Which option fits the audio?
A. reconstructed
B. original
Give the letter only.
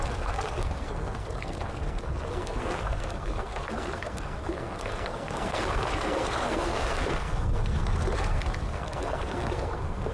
A